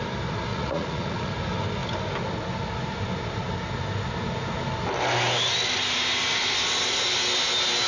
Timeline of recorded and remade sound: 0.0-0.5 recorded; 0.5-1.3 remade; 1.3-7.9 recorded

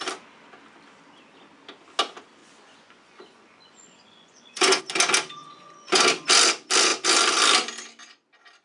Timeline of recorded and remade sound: 0.0-2.4 recorded; 2.4-4.8 remade; 4.8-5.4 recorded; 5.4-6.0 remade; 6.0-8.6 recorded

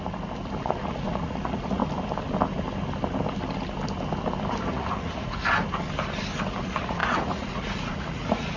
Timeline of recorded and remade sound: 0.0-0.6 recorded; 0.6-1.8 remade; 1.8-4.6 recorded; 4.6-5.4 remade; 5.4-6.6 recorded; 6.6-8.6 remade

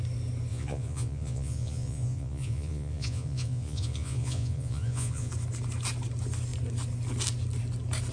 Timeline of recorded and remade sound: 0.0-0.5 recorded; 0.5-5.3 remade; 5.3-8.1 recorded

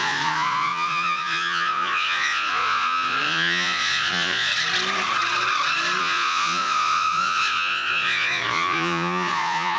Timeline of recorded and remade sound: 0.0-4.5 remade; 4.5-6.0 recorded; 6.0-9.8 remade

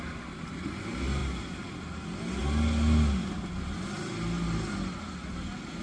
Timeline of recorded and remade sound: 0.0-5.8 recorded

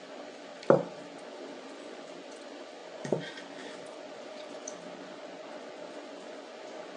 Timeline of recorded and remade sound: 0.0-0.5 remade; 0.5-1.2 recorded; 1.2-7.0 remade